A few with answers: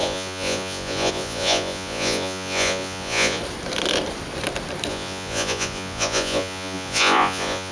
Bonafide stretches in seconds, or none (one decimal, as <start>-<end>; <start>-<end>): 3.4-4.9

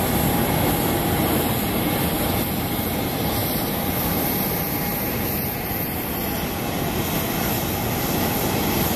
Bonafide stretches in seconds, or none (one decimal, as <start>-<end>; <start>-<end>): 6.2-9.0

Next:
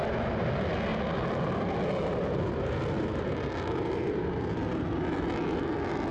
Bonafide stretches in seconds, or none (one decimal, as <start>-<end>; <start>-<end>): 0.0-6.1

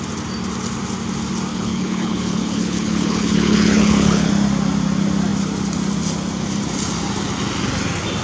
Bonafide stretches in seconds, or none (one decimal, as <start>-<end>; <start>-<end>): 0.0-1.5; 4.3-8.2

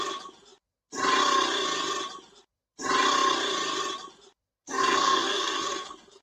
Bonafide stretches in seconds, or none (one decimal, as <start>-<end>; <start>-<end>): 0.0-4.6